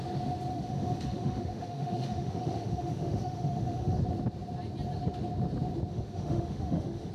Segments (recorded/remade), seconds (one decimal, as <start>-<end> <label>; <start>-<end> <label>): 0.0-0.5 recorded; 0.5-4.0 remade; 4.0-5.9 recorded; 5.9-7.1 remade